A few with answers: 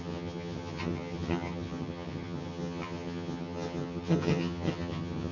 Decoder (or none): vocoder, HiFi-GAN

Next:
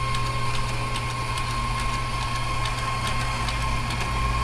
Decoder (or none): none